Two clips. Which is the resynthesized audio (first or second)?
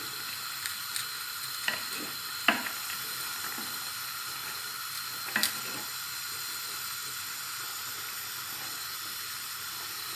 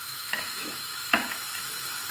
second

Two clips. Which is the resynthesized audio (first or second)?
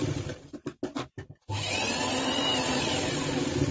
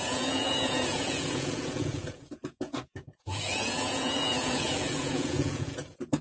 second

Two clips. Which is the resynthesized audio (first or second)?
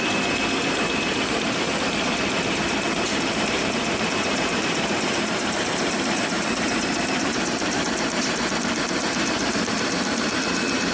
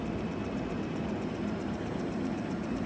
first